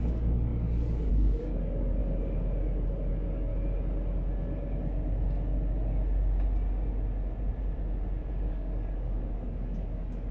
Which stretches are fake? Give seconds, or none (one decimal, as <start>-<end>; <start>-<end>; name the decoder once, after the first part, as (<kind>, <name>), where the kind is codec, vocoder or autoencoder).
0.0-2.0 (codec, DAC); 3.1-3.5; 8.3-10.3

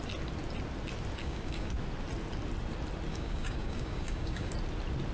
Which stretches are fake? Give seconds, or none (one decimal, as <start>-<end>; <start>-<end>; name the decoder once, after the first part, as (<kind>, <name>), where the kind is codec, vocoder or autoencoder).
1.2-1.7 (codec, DAC); 3.1-4.5

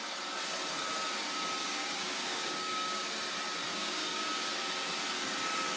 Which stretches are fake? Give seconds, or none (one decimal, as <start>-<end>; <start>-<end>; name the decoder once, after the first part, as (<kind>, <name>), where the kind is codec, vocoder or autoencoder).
1.6-3.0 (codec, DAC); 3.7-4.3

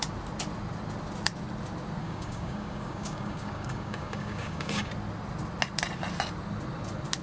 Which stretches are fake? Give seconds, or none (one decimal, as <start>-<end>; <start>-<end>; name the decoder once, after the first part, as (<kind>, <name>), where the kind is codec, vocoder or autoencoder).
2.0-4.9 (codec, DAC)